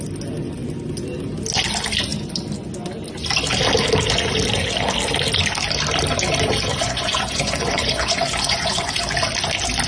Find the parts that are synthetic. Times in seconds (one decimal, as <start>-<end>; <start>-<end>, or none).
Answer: 6.7-8.9